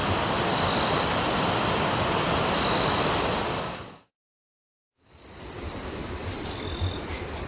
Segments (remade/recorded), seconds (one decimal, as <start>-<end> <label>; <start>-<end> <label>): 0.0-3.5 recorded; 3.5-5.4 remade; 5.4-7.5 recorded